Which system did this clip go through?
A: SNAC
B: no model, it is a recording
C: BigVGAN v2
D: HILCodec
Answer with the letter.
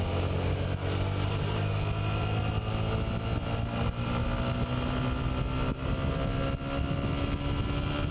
B